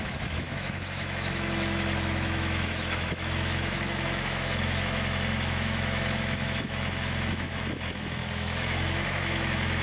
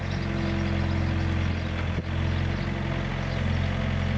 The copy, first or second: first